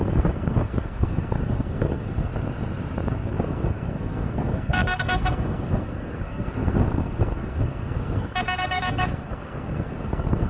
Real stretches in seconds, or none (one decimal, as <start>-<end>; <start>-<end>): 2.3-3.1